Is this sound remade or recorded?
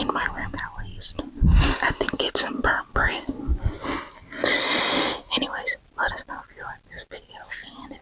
recorded